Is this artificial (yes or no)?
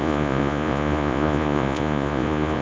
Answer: yes